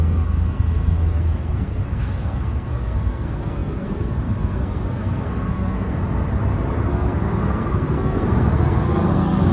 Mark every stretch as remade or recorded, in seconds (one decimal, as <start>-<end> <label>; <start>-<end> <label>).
0.0-6.0 remade; 6.0-6.9 recorded; 6.9-9.5 remade